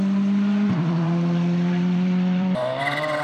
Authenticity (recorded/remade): remade